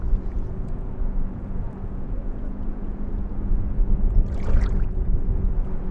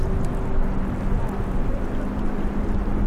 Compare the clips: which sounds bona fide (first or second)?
second